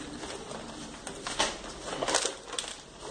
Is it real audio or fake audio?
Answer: real